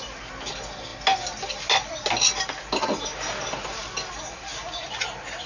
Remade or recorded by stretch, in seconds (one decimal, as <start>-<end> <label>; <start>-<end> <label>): 0.0-5.5 recorded